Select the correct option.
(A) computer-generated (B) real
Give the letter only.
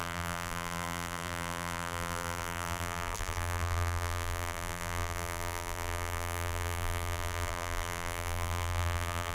A